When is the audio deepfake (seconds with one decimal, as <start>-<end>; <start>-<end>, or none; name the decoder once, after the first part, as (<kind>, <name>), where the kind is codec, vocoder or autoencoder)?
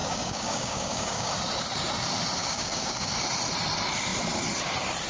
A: 0.0-1.3 (codec, DAC); 2.4-3.1